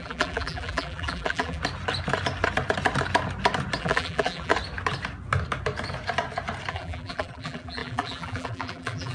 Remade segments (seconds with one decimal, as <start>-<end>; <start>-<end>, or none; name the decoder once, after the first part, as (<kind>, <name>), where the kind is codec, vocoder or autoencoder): 0.0-1.6 (vocoder, BigVGAN v2); 3.8-4.5; 6.7-9.1